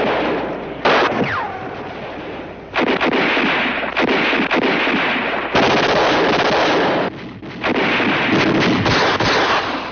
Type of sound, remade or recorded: recorded